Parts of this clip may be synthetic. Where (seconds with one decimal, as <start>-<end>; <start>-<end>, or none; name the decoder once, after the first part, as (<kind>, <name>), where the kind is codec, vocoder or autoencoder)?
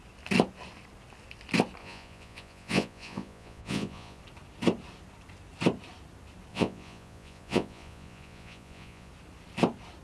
1.8-4.2 (vocoder, Vocos); 6.5-9.1